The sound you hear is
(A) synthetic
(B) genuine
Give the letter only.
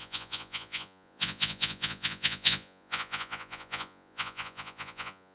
A